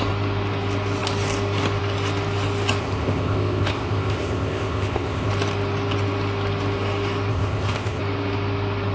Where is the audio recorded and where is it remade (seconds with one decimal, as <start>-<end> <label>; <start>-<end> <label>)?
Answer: 0.0-2.8 recorded; 2.8-5.3 remade; 5.3-7.3 recorded; 7.3-8.0 remade; 8.0-8.9 recorded